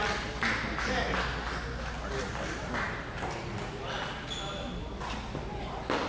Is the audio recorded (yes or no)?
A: yes